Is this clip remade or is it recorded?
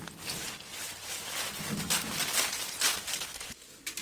recorded